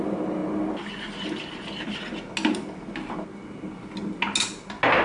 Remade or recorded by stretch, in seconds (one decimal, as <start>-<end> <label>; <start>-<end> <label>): 0.0-5.0 recorded